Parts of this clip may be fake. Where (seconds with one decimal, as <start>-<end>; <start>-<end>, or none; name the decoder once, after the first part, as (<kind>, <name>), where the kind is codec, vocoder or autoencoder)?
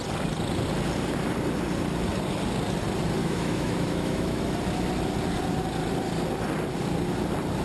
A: 3.2-4.4 (autoencoder, DAC-VAE)